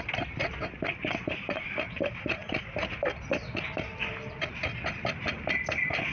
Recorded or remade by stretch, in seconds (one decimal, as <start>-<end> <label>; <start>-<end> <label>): 0.0-6.1 recorded